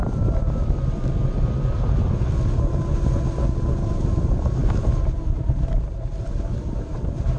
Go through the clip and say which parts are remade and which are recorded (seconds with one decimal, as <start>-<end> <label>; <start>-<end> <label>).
0.0-3.9 recorded; 3.9-7.4 remade